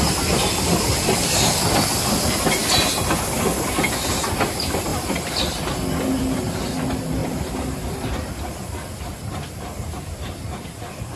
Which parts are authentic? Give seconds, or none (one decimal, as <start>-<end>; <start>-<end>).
0.0-4.9; 5.6-7.2